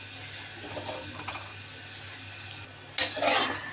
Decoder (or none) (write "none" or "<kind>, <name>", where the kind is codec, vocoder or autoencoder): none